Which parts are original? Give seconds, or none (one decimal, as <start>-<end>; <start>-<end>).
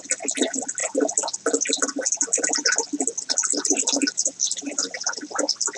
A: 0.0-3.5; 5.1-5.8